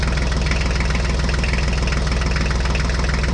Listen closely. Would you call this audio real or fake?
real